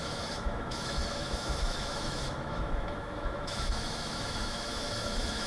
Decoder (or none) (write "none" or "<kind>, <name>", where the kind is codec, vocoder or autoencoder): autoencoder, DAC-VAE